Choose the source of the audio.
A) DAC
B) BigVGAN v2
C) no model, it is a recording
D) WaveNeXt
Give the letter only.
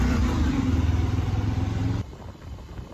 B